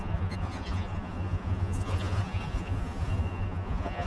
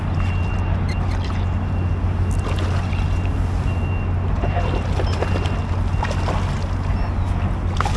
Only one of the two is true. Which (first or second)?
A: second